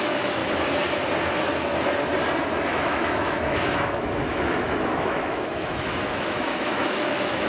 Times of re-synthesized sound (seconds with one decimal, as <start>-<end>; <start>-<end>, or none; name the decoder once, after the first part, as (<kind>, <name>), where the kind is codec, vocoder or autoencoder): 0.0-0.4 (autoencoder, DAC-VAE); 2.5-7.5